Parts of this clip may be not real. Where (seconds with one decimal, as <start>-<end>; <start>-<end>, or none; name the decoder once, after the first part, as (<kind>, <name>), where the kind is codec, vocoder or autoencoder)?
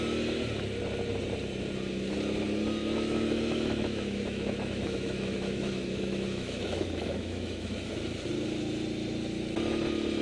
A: 2.8-7.9 (autoencoder, DAC-VAE)